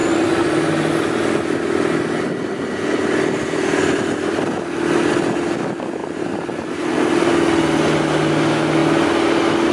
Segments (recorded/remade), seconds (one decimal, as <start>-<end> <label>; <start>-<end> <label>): 0.0-6.0 recorded; 6.0-7.3 remade; 7.3-9.7 recorded